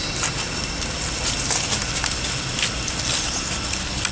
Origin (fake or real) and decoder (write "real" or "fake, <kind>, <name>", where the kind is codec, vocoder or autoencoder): real